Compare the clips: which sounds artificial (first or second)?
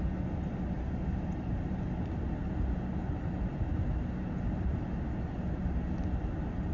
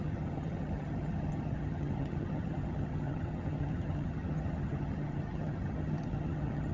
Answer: second